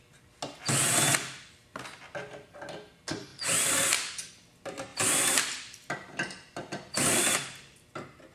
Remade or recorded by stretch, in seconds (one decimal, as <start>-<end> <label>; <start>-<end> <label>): 0.0-3.3 recorded; 3.3-4.3 remade; 4.3-4.9 recorded; 4.9-7.9 remade; 7.9-8.3 recorded